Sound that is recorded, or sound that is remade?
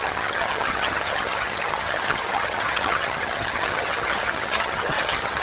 remade